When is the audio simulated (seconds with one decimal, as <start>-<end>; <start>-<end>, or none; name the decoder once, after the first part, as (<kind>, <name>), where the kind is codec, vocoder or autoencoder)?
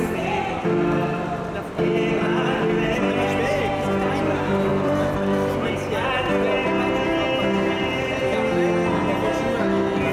4.7-5.7 (vocoder, BigVGAN v2)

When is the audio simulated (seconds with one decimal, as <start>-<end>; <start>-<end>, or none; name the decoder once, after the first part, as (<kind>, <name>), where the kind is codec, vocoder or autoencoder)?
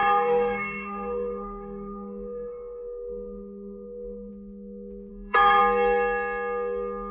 0.0-4.3 (codec, SNAC); 5.1-5.6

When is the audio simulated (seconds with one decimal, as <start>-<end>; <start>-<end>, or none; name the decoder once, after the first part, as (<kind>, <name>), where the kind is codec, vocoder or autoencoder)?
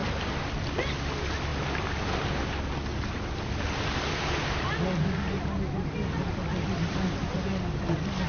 none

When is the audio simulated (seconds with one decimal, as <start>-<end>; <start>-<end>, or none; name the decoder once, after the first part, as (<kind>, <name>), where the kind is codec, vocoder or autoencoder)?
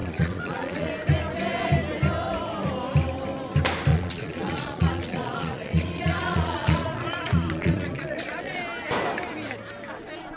0.0-0.9 (vocoder, Vocos); 3.9-8.6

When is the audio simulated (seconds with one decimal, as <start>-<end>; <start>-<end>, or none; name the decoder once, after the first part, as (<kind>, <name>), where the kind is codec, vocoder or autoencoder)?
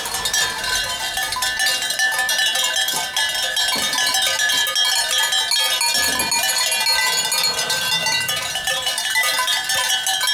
8.0-9.9 (vocoder, BigVGAN v2)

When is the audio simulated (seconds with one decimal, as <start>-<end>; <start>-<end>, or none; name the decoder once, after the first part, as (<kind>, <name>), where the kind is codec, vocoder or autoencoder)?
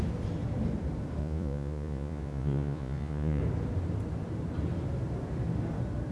1.2-3.4 (vocoder, Vocos)